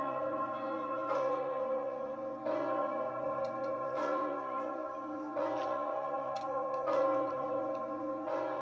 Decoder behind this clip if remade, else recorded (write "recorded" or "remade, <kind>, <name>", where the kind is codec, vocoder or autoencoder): remade, vocoder, Vocos